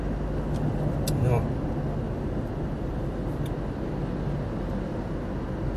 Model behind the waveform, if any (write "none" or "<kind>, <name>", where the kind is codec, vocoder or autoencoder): none